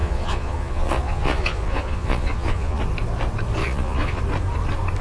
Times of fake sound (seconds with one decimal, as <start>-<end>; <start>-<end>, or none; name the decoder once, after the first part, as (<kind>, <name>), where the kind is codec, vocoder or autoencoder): 0.0-2.8 (vocoder, Vocos); 3.6-4.2